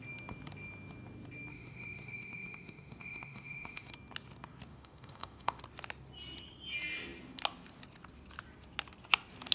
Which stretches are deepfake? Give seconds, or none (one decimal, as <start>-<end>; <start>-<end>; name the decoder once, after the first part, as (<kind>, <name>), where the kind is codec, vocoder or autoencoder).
1.5-3.9 (autoencoder, DAC-VAE); 4.7-5.6